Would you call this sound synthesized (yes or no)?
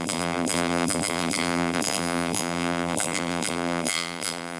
yes